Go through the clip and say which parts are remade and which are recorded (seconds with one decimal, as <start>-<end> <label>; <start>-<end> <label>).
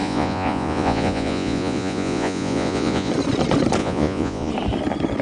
0.0-3.1 remade; 3.1-3.8 recorded; 3.8-4.5 remade; 4.5-5.2 recorded